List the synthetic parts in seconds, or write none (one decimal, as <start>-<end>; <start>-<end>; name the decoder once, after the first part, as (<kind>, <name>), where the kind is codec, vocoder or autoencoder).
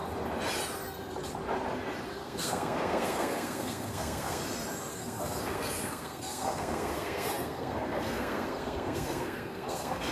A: 2.2-4.4 (codec, SNAC); 4.9-10.1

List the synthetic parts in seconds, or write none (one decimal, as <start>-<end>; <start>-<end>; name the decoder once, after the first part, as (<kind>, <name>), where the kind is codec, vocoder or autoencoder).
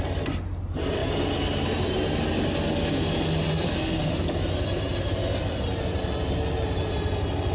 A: 3.5-4.1 (codec, SNAC)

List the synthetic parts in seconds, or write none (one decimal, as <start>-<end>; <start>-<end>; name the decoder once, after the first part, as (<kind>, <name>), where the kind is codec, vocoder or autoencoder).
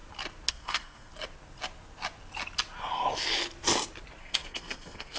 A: 0.5-1.1 (codec, SNAC); 4.2-5.2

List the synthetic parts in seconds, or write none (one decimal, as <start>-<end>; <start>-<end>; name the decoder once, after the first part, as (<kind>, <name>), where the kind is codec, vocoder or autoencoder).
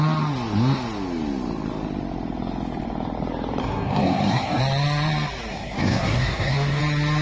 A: 3.6-4.6 (codec, SNAC); 5.5-6.8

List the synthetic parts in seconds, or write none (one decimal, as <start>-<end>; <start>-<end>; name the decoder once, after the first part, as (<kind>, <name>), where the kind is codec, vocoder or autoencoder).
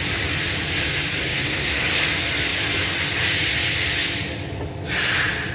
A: 1.2-2.0 (codec, SNAC)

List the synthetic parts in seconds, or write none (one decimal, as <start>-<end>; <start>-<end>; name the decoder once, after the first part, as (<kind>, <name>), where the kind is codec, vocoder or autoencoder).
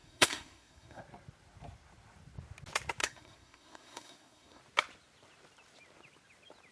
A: 0.0-1.0 (codec, SNAC); 3.0-4.6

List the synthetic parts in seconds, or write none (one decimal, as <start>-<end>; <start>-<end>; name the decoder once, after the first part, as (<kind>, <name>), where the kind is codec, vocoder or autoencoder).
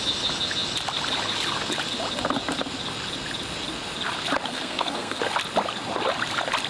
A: 4.5-5.2 (codec, SNAC)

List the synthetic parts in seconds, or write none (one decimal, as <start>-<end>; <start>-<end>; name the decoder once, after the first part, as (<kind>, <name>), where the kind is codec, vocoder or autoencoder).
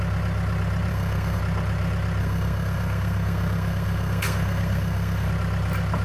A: 0.9-1.4 (codec, SNAC); 2.2-5.3